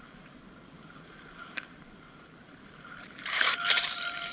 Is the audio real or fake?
fake